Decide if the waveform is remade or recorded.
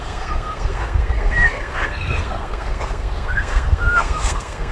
remade